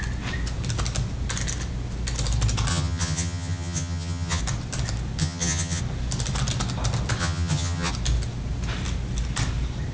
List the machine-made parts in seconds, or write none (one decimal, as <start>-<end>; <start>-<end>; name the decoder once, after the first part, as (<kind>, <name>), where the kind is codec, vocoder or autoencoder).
2.7-4.4 (vocoder, HiFi-GAN); 5.2-5.8; 7.2-7.9